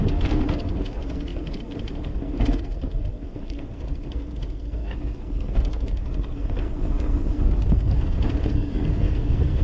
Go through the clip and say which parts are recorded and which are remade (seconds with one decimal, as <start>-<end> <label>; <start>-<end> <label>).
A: 0.0-9.6 remade